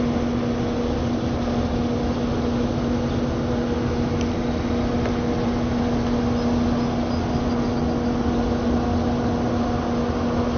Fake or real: real